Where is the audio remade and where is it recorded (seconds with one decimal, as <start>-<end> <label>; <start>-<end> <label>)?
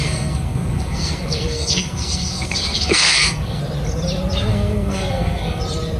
0.0-3.6 remade; 3.6-4.5 recorded; 4.5-5.6 remade; 5.6-6.0 recorded